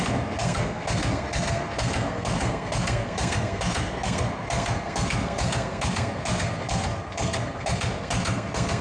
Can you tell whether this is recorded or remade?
remade